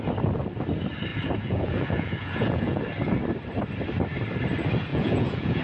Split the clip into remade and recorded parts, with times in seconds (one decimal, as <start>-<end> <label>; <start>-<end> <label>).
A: 0.0-1.1 recorded; 1.1-2.8 remade; 2.8-4.9 recorded; 4.9-5.6 remade